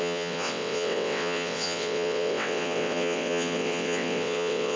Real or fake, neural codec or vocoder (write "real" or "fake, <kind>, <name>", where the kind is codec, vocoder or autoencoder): fake, vocoder, WaveNeXt